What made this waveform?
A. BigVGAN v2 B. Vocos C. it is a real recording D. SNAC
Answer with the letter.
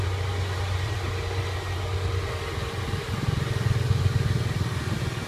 C